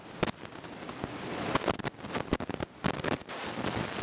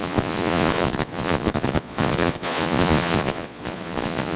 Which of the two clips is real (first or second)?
first